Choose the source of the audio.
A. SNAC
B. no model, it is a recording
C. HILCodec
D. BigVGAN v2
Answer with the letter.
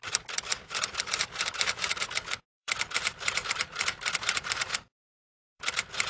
D